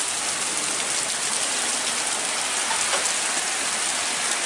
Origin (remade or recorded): recorded